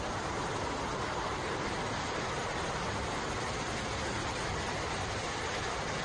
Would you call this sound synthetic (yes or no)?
no